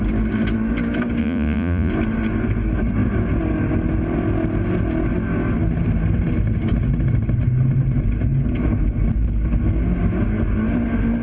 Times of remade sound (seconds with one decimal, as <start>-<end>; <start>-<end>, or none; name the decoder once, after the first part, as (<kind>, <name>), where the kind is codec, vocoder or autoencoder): 1.2-1.9 (vocoder, Vocos)